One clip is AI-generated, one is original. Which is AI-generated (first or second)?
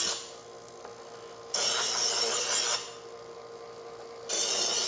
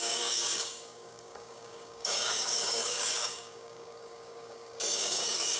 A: second